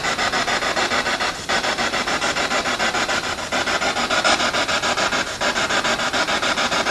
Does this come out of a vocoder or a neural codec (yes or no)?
no